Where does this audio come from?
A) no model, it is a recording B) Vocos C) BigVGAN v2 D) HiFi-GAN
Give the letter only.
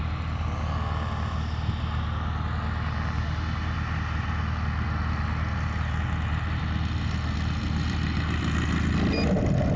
A